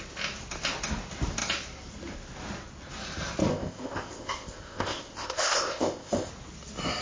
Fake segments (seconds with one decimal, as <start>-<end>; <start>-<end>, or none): 3.5-6.3